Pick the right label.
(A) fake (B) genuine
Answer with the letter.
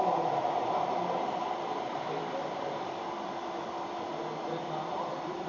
A